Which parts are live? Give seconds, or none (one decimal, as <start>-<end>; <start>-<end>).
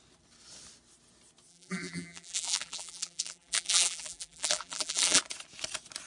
0.0-1.5; 5.2-6.1